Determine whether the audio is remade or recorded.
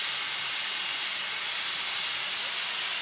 recorded